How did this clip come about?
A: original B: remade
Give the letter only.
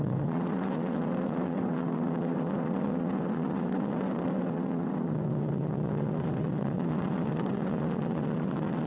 B